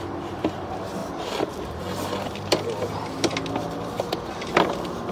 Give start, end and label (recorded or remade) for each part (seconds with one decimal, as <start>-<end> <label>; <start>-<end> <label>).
0.0-5.1 remade